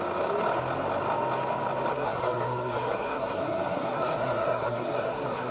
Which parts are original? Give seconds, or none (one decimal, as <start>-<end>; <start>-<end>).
0.0-1.9